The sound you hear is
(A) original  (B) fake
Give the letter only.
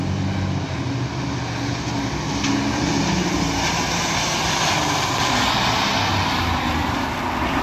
A